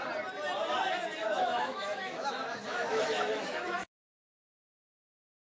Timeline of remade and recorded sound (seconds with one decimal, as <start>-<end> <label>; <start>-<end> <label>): 0.0-1.2 recorded; 1.2-4.5 remade; 4.5-5.5 recorded